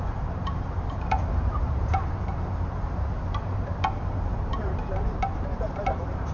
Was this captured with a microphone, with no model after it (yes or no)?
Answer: no